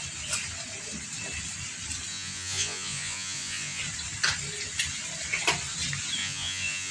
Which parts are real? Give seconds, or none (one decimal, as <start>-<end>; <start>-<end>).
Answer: 0.0-2.1; 3.8-6.2